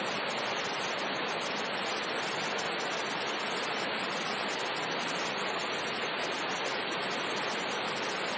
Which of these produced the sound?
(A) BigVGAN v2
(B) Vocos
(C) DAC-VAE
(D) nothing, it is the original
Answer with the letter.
D